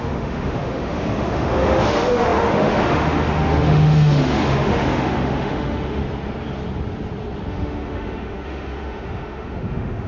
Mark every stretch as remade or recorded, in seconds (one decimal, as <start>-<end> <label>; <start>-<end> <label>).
0.0-6.0 remade; 6.0-7.5 recorded; 7.5-10.1 remade